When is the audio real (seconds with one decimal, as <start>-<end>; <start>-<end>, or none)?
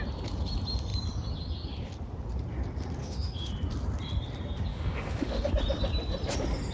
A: 0.0-3.0; 3.5-4.7; 5.5-6.7